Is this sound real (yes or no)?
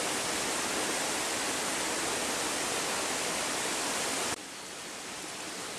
yes